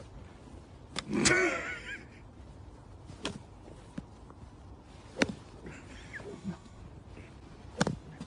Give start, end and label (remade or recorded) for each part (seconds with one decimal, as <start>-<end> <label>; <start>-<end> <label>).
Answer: 0.0-6.3 recorded; 6.3-6.8 remade; 6.8-8.3 recorded